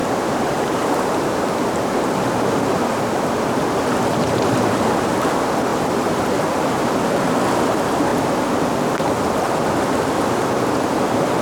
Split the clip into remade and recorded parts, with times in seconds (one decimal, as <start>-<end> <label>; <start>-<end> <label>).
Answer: 0.0-1.9 remade; 1.9-5.7 recorded; 5.7-7.6 remade; 7.6-11.4 recorded